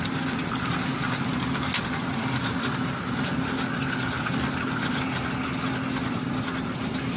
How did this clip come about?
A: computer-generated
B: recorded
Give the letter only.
B